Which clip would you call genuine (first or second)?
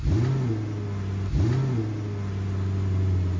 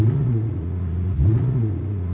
first